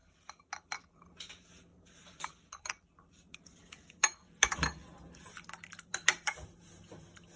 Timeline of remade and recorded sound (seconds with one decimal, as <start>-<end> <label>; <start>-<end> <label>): 0.0-0.9 recorded; 0.9-7.4 remade